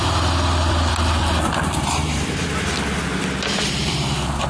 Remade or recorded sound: remade